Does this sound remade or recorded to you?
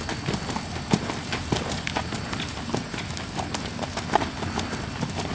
recorded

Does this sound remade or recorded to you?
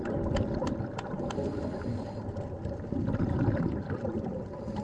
remade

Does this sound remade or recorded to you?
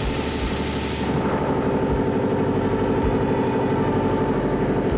recorded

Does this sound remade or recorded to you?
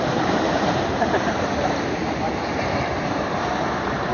remade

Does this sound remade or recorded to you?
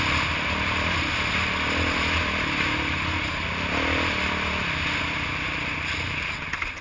recorded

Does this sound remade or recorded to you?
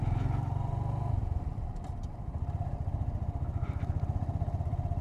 recorded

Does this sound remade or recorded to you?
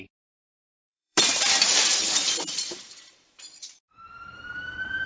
remade